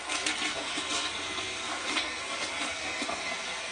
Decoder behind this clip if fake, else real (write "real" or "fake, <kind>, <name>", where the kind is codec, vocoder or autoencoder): fake, codec, SNAC